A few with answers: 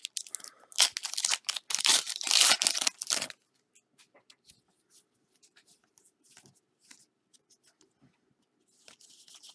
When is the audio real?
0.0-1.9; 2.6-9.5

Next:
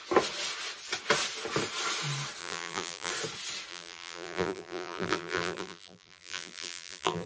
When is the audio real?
0.0-2.4; 3.1-3.7